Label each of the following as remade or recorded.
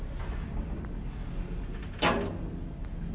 recorded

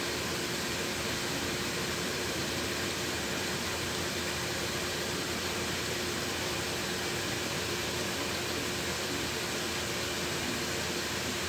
remade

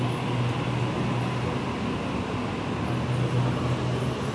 recorded